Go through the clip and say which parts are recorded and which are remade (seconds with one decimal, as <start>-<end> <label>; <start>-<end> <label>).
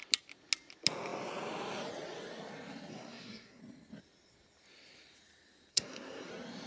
0.0-2.9 recorded; 2.9-3.6 remade; 3.6-5.7 recorded; 5.7-6.3 remade; 6.3-6.7 recorded